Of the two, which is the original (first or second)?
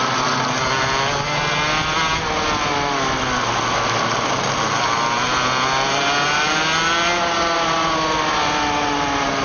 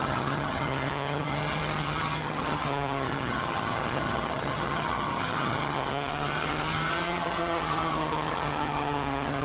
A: first